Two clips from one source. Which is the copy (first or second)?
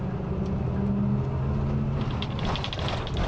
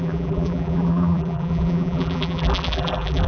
second